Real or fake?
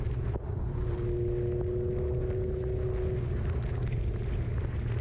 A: real